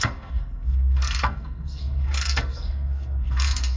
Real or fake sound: fake